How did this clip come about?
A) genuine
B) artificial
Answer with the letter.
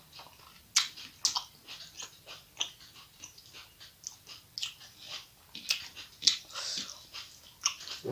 A